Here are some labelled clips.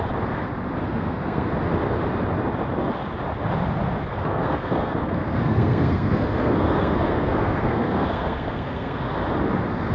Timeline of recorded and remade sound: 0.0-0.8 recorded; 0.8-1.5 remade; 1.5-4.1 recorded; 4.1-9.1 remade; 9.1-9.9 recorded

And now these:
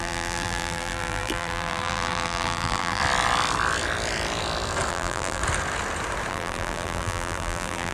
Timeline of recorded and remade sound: 0.0-3.0 remade; 3.0-4.9 recorded; 4.9-5.4 remade; 5.4-6.3 recorded; 6.3-7.9 remade